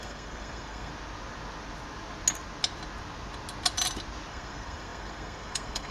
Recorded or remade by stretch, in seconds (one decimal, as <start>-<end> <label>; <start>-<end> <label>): 0.0-0.9 remade; 0.9-4.3 recorded; 4.3-5.9 remade